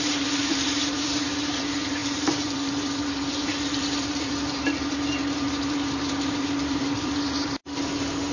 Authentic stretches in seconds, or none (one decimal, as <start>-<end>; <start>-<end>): none